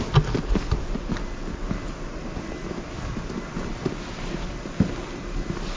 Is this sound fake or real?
real